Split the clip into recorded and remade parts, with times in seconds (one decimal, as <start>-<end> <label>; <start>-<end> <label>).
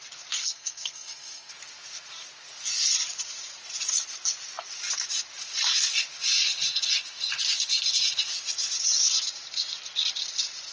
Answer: 0.0-0.4 recorded; 0.4-1.5 remade; 1.5-10.7 recorded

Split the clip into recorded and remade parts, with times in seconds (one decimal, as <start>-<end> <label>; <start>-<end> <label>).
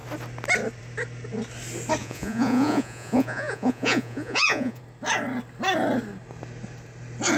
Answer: 0.0-2.0 recorded; 2.0-4.8 remade; 4.8-7.4 recorded